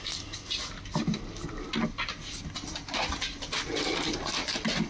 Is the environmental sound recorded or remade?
recorded